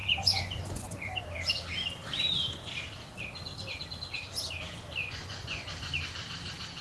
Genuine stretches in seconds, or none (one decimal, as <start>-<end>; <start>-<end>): 1.2-5.0; 5.7-6.8